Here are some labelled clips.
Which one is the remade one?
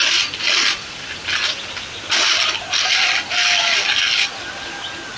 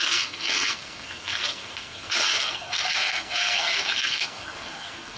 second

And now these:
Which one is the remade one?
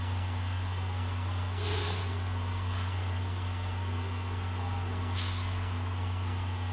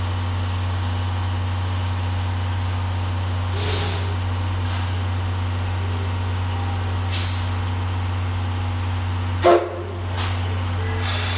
first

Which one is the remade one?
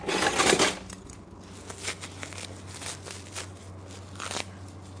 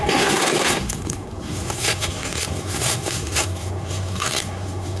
second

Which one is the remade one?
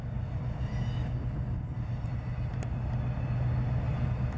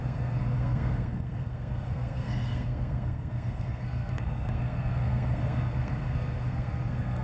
second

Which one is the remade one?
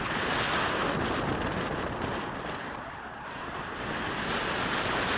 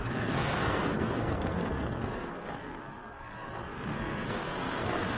second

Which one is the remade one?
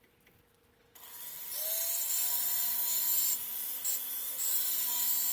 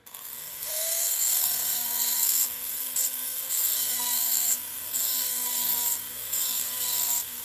second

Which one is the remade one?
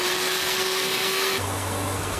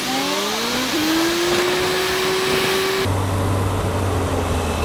first